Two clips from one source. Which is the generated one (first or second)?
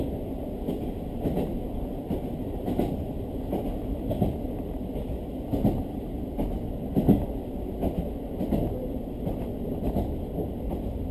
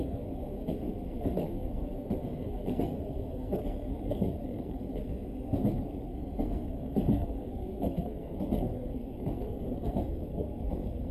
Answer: second